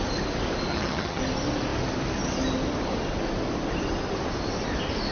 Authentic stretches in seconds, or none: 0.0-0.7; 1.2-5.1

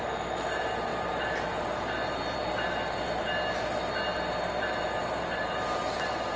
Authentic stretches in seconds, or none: 0.0-6.4

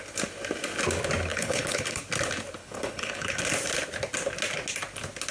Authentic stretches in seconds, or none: 0.0-1.3; 2.0-2.6; 3.4-5.3

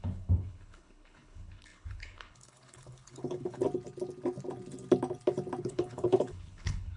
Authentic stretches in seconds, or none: 3.6-5.6

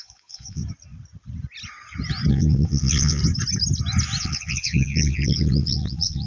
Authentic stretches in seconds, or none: 0.6-2.3; 3.2-4.2

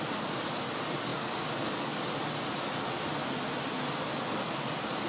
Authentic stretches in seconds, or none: 0.0-5.1